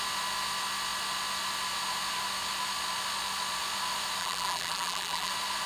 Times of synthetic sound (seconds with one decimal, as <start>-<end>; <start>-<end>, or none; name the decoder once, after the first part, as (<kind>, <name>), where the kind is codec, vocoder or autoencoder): 4.2-5.3 (vocoder, BigVGAN v2)